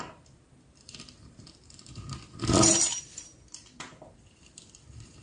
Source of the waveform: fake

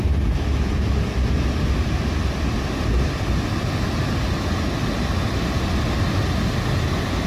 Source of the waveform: real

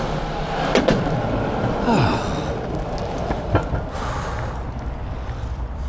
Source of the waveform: real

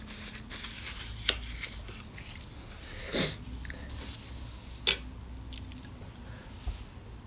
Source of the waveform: real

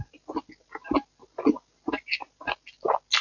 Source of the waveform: real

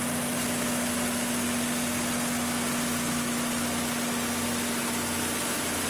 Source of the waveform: real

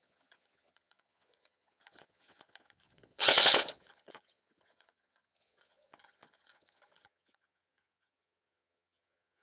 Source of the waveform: fake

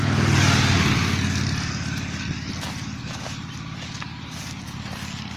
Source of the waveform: real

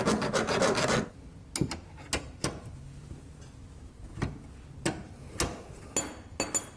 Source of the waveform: real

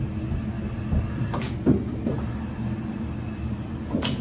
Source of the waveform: real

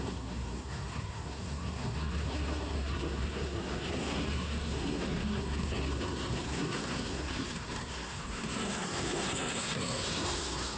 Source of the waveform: fake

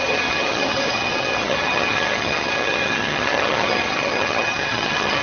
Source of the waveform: fake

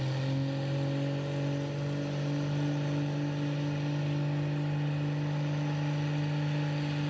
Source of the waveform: real